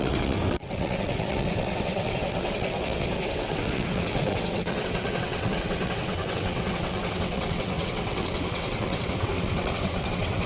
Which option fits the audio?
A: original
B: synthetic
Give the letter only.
B